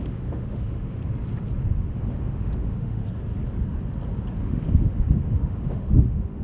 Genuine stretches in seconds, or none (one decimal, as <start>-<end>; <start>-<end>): 1.0-1.7; 3.0-4.4